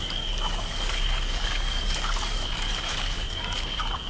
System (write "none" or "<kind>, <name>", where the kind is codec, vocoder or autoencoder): codec, DAC